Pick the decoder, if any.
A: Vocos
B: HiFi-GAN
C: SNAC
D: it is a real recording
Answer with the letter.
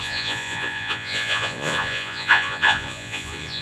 A